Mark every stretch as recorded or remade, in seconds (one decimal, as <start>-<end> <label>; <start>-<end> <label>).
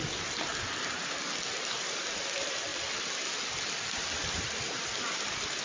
0.0-0.5 remade; 0.5-1.8 recorded; 1.8-2.7 remade; 2.7-4.1 recorded; 4.1-5.6 remade